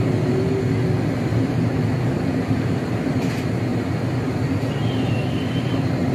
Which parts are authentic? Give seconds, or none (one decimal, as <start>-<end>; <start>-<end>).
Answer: 0.0-1.3; 2.9-6.1